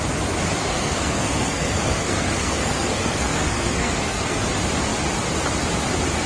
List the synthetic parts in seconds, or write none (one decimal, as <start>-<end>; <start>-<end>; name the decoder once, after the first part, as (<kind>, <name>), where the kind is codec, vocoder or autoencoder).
0.6-4.4 (codec, SNAC)